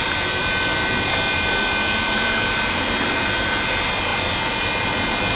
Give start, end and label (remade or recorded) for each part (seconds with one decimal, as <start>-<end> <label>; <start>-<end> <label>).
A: 0.0-5.4 recorded